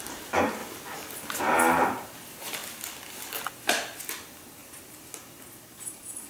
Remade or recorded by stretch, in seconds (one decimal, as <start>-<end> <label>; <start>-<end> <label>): 0.0-0.6 remade; 0.6-1.4 recorded; 1.4-2.6 remade; 2.6-4.1 recorded; 4.1-4.6 remade; 4.6-5.4 recorded; 5.4-6.3 remade